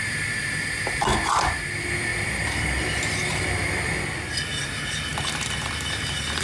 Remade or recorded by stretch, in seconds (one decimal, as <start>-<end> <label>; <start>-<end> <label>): 0.0-6.4 recorded